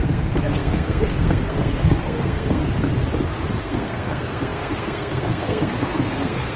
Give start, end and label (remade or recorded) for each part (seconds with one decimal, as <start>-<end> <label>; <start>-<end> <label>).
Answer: 0.0-2.6 remade; 2.6-3.6 recorded; 3.6-6.6 remade